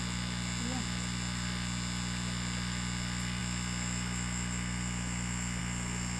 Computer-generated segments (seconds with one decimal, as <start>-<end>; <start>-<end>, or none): none